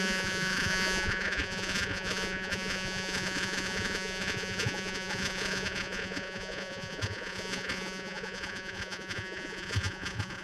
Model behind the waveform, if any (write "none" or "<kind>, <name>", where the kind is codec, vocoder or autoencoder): vocoder, Vocos